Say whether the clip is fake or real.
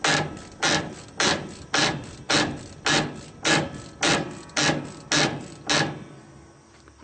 real